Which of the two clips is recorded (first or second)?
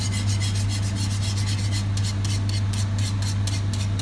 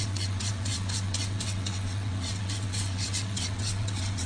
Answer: first